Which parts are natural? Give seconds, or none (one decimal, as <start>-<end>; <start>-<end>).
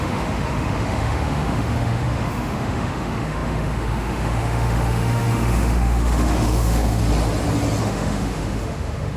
7.0-7.8